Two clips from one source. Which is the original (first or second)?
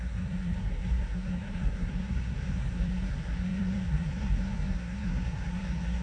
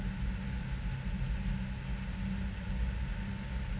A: second